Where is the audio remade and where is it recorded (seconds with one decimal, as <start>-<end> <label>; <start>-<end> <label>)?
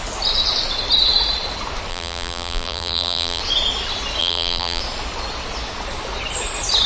0.0-1.9 recorded; 1.9-3.4 remade; 3.4-4.2 recorded; 4.2-4.8 remade; 4.8-6.9 recorded